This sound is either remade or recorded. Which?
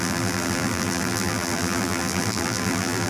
remade